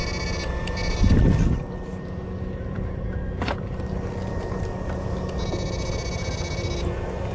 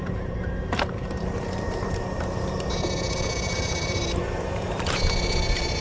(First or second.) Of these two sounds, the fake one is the second